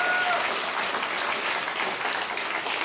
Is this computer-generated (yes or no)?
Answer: no